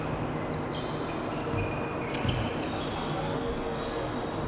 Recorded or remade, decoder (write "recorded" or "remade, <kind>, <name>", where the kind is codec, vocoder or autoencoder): recorded